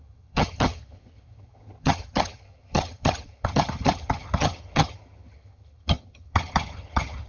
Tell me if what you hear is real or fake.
fake